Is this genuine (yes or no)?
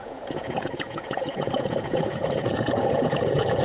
no